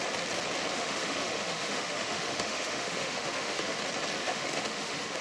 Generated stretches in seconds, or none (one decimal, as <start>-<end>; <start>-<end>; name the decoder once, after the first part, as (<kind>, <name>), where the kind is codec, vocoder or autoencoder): 0.7-3.8 (autoencoder, DAC-VAE); 4.2-5.2